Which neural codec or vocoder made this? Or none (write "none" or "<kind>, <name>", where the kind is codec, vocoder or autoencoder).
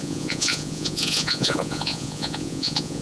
vocoder, Vocos